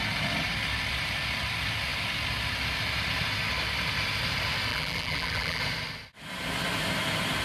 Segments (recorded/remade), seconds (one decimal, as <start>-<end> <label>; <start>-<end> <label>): 0.0-4.7 recorded; 4.7-5.6 remade; 5.6-7.4 recorded